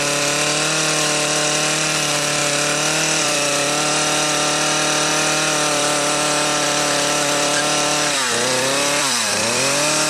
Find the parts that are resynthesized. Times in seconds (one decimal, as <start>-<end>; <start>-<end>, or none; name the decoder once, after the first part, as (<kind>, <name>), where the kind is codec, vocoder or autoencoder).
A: 0.0-2.4 (vocoder, BigVGAN v2); 3.2-5.1; 5.8-10.1